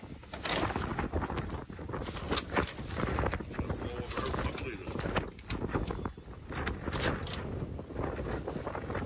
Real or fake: real